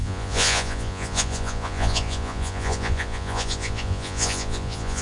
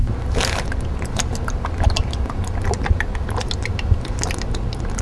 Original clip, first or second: second